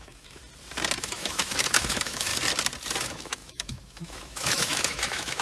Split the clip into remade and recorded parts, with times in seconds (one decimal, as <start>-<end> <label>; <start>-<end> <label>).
0.0-0.4 remade; 0.4-1.0 recorded; 1.0-2.3 remade; 2.3-3.0 recorded; 3.0-5.4 remade